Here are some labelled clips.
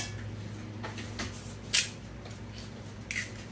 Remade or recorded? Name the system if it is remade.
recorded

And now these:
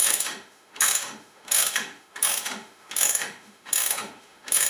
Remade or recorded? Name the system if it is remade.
remade, autoencoder, DAC-VAE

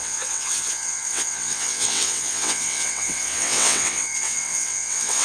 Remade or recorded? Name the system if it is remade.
remade, vocoder, WaveNeXt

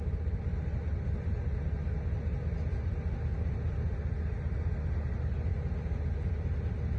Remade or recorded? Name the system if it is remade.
recorded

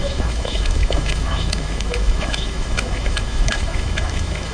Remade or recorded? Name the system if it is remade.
remade, autoencoder, DAC-VAE